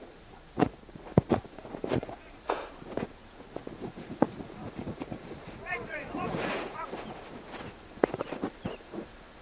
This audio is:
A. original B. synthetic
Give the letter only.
B